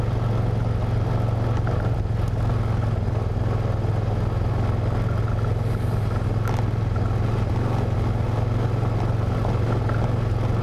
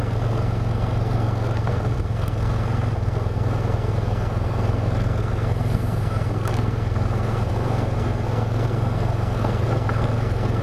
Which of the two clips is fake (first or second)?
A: second